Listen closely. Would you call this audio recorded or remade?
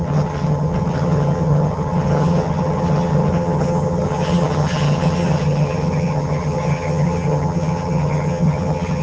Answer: remade